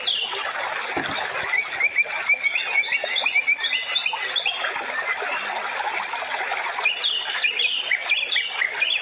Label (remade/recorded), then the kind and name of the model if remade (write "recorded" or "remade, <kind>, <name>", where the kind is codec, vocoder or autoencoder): recorded